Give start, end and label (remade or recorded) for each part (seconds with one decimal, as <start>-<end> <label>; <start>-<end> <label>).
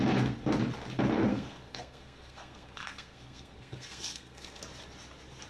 0.0-1.3 recorded; 1.3-4.6 remade; 4.6-5.5 recorded